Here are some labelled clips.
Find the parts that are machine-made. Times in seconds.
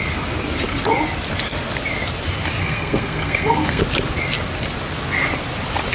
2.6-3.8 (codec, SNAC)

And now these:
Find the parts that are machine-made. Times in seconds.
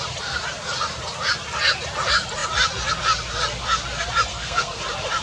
4.3-4.8 (codec, SNAC)